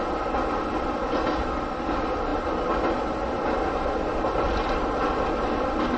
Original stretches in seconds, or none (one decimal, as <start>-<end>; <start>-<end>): 0.0-6.0